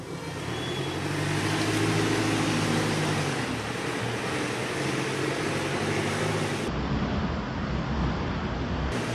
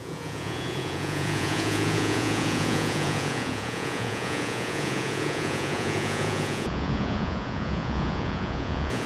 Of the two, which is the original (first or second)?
first